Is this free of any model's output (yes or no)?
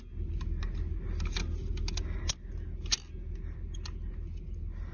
yes